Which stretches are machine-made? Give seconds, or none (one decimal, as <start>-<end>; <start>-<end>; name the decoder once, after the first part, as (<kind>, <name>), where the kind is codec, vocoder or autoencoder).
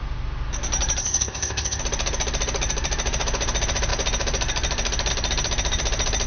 1.0-1.8 (codec, ZipCodec)